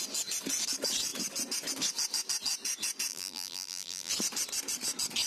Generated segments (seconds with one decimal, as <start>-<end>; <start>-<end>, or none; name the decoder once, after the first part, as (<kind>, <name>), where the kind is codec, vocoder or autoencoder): 3.1-4.1 (vocoder, BigVGAN v2)